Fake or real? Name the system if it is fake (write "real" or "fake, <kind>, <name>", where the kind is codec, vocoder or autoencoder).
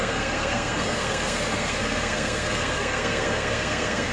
fake, codec, SNAC